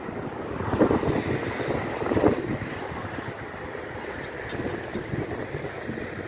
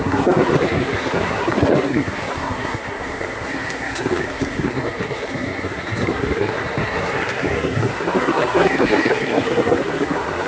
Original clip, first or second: first